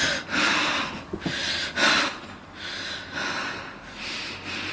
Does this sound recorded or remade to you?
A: recorded